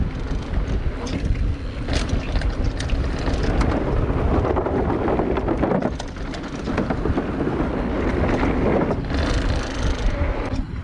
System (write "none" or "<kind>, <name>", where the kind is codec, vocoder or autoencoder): none